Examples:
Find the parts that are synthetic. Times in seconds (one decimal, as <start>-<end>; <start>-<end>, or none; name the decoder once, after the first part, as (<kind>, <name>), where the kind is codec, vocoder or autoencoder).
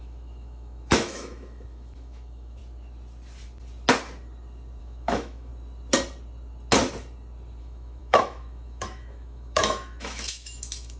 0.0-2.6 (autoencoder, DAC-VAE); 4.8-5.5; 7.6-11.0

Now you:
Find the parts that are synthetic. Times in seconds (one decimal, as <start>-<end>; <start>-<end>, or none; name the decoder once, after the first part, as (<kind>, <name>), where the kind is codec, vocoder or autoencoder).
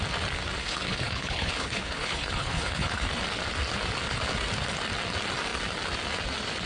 0.6-3.1 (codec, HILCodec)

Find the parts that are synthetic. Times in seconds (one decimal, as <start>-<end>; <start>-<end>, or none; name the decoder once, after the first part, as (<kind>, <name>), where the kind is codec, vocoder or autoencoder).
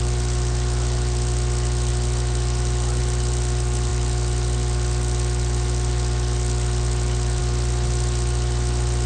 none